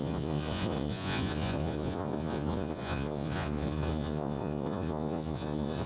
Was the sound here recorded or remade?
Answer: remade